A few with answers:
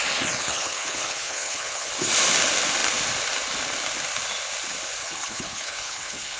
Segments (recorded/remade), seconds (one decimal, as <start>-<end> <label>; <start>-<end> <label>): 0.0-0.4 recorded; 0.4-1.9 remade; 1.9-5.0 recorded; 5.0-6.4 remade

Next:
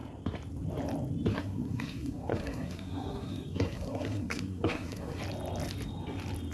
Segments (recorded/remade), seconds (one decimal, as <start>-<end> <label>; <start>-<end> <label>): 0.0-1.3 recorded; 1.3-5.2 remade; 5.2-6.5 recorded

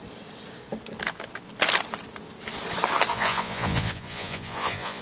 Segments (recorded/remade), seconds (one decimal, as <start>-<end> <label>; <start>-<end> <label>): 0.0-3.1 recorded; 3.1-5.0 remade

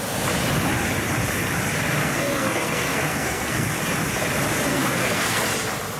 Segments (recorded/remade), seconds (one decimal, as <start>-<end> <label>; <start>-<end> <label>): 0.0-2.0 recorded; 2.0-3.8 remade; 3.8-4.7 recorded; 4.7-5.4 remade; 5.4-6.0 recorded

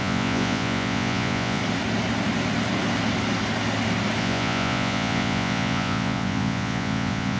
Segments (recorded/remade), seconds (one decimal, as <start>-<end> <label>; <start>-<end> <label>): 0.0-1.6 remade; 1.6-4.2 recorded; 4.2-7.4 remade

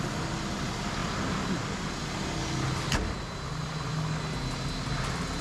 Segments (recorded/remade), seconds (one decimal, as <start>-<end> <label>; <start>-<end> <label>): 0.0-5.4 recorded

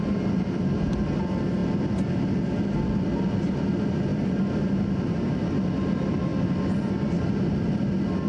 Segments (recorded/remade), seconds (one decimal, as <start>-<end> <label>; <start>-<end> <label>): 0.0-8.3 recorded